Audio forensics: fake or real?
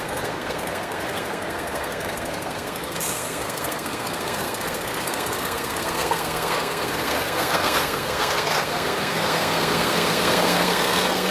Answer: fake